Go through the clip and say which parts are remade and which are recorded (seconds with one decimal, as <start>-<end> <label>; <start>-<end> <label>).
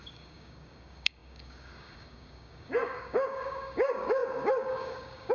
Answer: 0.0-5.3 remade